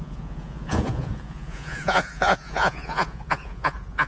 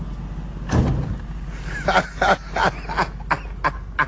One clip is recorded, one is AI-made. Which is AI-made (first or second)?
first